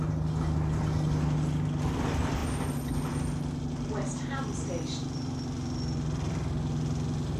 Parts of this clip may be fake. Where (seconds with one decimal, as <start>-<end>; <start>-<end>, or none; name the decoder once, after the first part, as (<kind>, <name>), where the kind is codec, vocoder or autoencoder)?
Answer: none